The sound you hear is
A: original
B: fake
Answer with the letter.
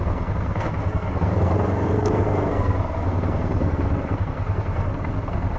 B